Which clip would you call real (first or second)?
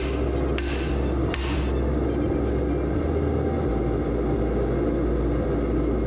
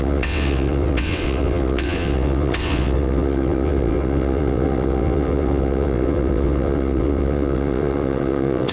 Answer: first